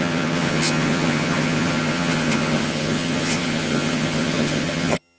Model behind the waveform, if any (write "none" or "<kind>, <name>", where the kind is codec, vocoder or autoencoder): vocoder, HiFi-GAN